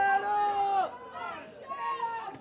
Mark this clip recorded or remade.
recorded